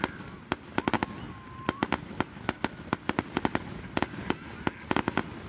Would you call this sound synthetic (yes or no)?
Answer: no